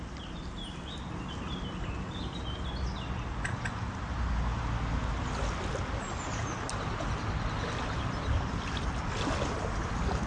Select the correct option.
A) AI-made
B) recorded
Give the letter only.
B